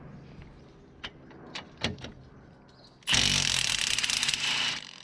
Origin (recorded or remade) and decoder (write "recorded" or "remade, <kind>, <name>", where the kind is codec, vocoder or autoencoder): recorded